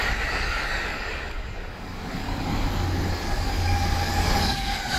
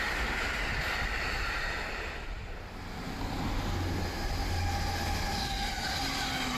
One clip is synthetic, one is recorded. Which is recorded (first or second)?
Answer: second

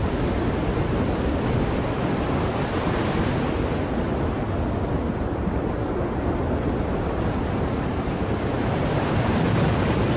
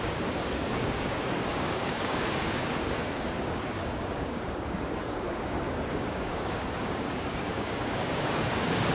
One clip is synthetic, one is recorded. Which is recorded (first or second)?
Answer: first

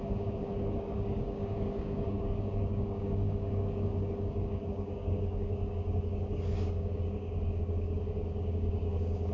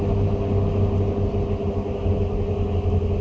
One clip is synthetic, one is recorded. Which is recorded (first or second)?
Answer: second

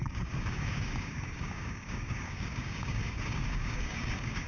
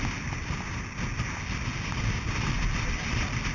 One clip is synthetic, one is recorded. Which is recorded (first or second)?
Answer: second